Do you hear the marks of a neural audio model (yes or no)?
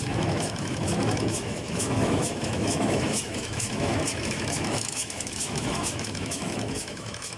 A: yes